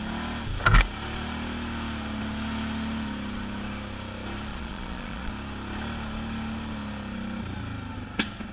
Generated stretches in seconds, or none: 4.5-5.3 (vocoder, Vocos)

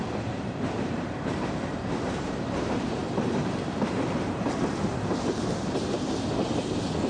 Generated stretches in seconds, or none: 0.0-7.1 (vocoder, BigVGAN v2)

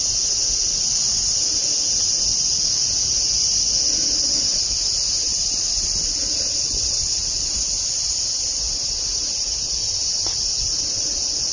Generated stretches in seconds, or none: 5.3-6.9 (vocoder, BigVGAN v2)